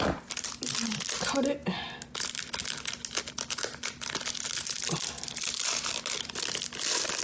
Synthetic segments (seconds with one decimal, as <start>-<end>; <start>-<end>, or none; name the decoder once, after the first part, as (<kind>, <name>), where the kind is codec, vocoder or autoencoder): none